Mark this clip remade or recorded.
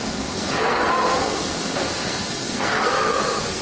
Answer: remade